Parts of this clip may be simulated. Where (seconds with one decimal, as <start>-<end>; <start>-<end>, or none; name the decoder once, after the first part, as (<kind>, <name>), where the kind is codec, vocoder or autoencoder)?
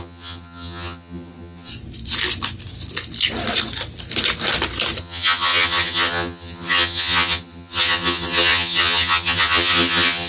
0.0-1.7 (vocoder, HiFi-GAN); 5.0-10.3